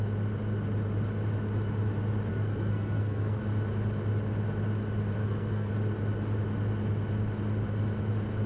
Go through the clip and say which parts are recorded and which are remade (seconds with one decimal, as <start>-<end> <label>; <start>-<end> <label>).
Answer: 0.0-2.3 recorded; 2.3-3.4 remade; 3.4-5.2 recorded; 5.2-5.7 remade; 5.7-8.5 recorded